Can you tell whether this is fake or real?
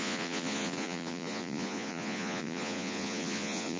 fake